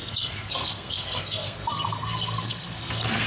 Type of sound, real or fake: fake